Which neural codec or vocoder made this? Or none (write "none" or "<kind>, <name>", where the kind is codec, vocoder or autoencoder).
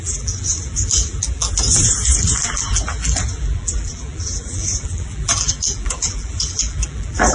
vocoder, BigVGAN v2